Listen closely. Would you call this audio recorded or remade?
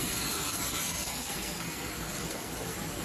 remade